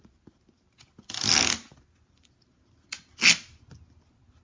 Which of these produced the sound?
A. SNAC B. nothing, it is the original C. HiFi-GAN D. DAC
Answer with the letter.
B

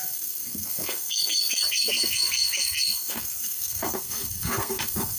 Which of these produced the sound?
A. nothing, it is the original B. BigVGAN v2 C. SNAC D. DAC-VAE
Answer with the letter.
C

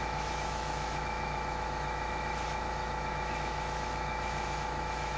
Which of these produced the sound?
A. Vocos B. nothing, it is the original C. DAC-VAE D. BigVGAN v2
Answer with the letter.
C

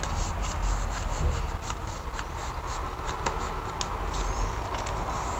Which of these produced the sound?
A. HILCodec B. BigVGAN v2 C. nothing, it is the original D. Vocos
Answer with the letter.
C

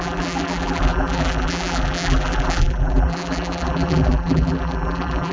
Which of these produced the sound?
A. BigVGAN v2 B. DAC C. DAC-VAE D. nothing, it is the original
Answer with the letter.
A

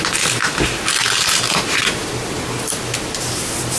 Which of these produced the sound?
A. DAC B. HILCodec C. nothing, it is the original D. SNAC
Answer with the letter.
C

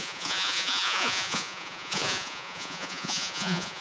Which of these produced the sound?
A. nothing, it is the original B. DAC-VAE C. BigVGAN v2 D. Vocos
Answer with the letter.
D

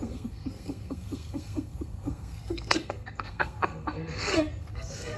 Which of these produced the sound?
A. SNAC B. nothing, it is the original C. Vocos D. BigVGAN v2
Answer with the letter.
A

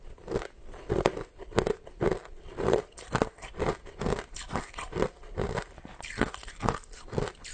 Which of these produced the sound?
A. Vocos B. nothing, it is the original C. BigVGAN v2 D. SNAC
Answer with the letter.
B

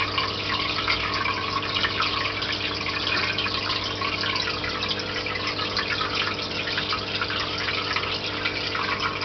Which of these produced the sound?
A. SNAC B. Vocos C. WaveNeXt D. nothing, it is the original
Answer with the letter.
D